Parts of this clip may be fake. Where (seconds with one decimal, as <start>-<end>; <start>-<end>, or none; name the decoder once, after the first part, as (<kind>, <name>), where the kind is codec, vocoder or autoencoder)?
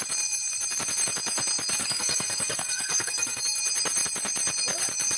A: 1.8-3.4 (codec, SNAC)